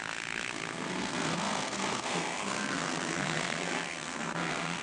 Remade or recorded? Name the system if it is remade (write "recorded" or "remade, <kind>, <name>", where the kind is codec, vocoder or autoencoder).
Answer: remade, codec, SNAC